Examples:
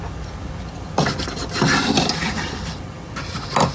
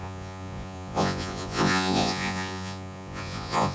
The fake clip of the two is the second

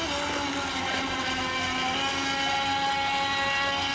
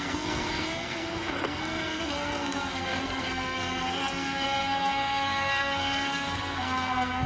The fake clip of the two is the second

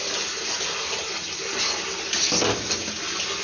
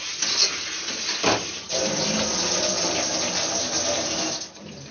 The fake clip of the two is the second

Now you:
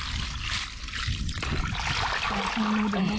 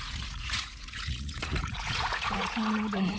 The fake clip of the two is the second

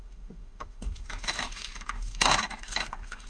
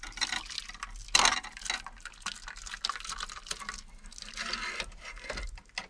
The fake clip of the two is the first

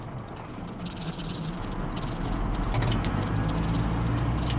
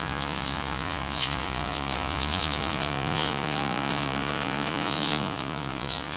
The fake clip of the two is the second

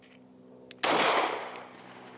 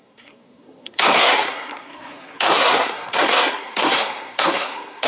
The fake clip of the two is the second